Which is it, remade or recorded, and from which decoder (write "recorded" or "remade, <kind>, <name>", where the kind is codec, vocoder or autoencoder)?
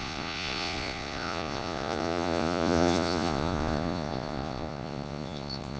remade, vocoder, Vocos